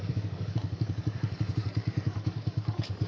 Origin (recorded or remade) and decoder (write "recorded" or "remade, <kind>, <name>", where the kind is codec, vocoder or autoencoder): remade, codec, DAC